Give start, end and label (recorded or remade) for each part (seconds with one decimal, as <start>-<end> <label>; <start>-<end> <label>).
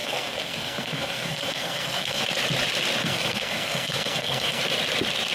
0.0-2.2 remade; 2.2-3.0 recorded; 3.0-4.6 remade; 4.6-5.3 recorded